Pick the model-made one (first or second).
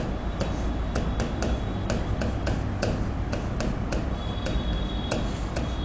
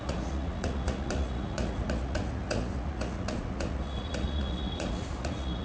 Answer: second